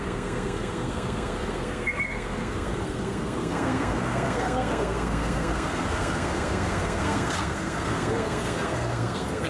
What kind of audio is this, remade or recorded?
remade